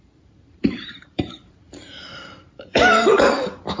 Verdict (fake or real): fake